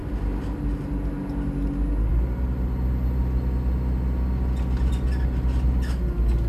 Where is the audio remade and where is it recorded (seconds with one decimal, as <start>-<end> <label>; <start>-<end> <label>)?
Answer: 0.0-6.5 recorded